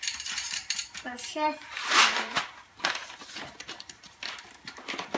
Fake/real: fake